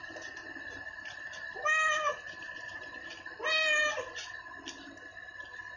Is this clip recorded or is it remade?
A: recorded